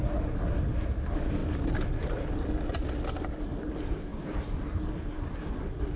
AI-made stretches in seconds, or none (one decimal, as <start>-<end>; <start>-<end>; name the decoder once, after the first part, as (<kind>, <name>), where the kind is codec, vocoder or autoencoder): none